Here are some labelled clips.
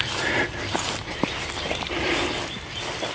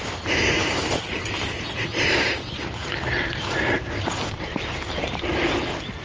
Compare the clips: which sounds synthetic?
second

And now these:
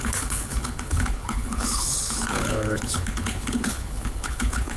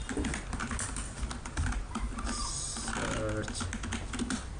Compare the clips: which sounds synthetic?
first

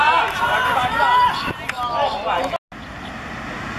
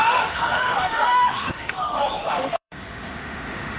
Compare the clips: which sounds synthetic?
second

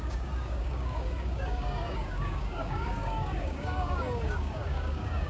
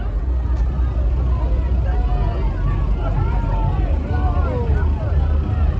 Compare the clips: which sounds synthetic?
first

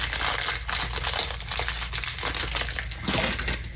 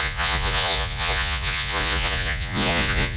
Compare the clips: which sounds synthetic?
second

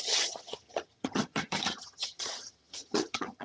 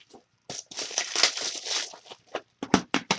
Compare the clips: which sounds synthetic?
first